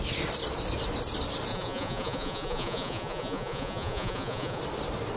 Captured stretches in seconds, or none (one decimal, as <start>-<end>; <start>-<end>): 0.0-1.5; 4.6-5.2